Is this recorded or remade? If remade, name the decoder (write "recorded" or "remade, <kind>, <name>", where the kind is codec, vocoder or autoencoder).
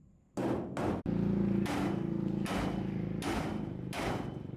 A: recorded